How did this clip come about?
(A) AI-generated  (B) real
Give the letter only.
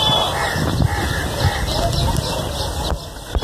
B